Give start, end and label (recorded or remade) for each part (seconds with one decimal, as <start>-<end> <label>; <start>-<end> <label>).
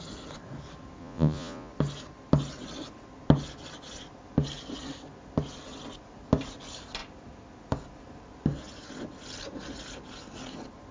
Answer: 0.0-1.0 recorded; 1.0-1.7 remade; 1.7-10.9 recorded